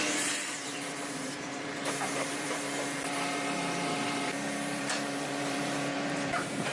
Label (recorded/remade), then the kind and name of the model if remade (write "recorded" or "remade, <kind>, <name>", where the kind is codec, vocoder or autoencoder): remade, vocoder, BigVGAN v2